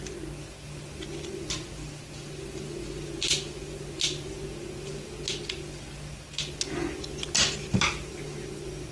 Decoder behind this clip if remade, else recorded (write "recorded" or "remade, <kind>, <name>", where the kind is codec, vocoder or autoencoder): recorded